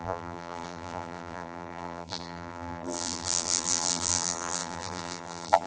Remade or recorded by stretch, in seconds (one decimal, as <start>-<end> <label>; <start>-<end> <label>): 0.0-5.7 remade